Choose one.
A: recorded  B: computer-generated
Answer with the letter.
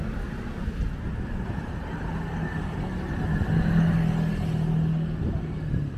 A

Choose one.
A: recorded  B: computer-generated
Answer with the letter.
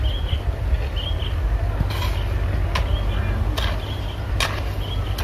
A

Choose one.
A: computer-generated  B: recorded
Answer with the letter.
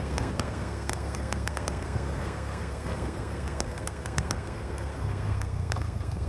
A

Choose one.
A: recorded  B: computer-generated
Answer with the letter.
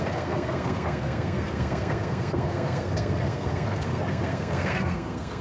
B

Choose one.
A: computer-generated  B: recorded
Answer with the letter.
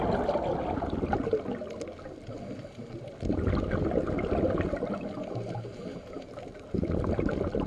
B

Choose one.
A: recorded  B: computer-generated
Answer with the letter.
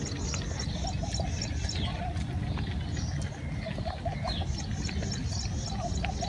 A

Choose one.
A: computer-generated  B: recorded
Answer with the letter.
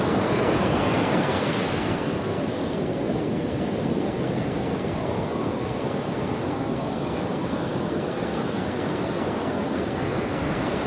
A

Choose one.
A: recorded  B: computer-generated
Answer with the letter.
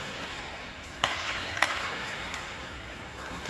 B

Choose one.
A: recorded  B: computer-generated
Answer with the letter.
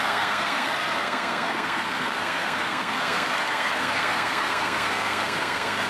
B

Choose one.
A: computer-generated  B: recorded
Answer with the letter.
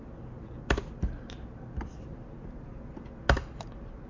B